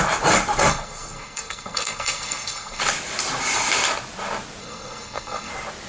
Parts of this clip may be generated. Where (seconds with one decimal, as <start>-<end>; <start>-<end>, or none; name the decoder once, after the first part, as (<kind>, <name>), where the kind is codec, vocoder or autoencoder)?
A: 0.7-2.8 (codec, SNAC); 4.6-5.5